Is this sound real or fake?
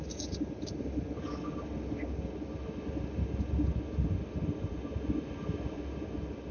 real